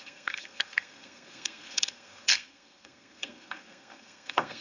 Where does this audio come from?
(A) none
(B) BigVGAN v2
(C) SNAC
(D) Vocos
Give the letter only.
C